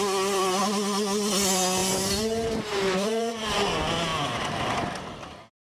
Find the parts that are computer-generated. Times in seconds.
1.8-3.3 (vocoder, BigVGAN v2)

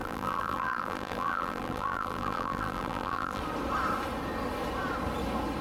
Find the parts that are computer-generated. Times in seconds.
0.0-3.4 (vocoder, BigVGAN v2)

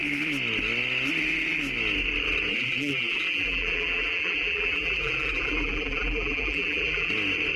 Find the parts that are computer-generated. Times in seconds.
2.5-7.1 (vocoder, BigVGAN v2)

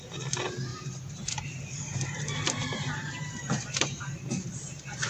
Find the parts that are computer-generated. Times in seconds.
0.7-1.4 (vocoder, BigVGAN v2); 2.6-4.2

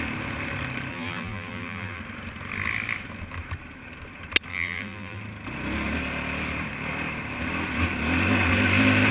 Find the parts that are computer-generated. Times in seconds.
0.9-2.0 (vocoder, BigVGAN v2); 4.5-5.2

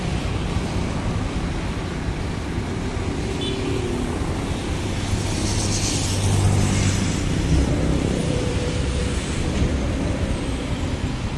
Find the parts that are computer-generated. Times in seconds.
8.2-9.0 (vocoder, BigVGAN v2)

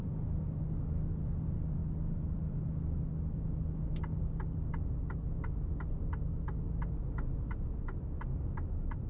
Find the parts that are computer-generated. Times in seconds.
none